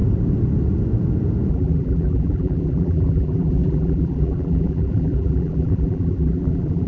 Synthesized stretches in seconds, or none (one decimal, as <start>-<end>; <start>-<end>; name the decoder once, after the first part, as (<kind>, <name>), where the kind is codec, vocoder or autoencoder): 1.5-6.9 (vocoder, BigVGAN v2)